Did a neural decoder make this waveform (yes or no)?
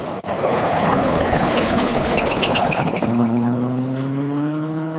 yes